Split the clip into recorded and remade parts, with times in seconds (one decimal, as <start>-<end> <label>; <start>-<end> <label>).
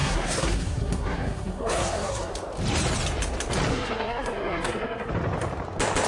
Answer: 0.0-2.3 remade; 2.3-3.7 recorded; 3.7-5.1 remade; 5.1-6.1 recorded